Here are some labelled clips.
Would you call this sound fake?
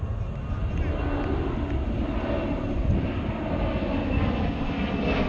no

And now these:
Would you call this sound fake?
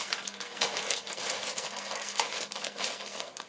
yes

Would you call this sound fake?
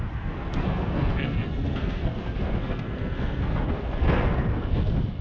yes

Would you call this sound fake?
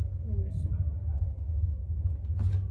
no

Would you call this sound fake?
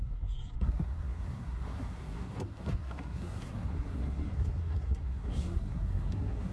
yes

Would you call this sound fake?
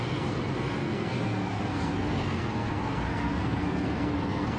yes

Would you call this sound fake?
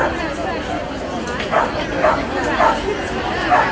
no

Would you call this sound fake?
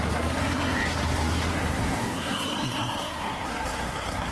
yes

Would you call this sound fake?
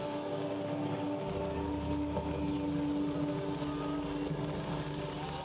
no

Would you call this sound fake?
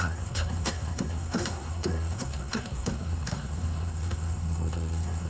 yes